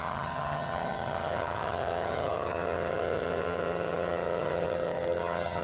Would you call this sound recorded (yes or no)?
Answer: no